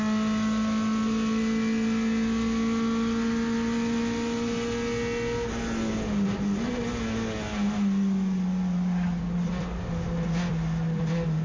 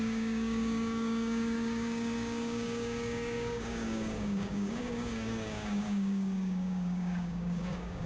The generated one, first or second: second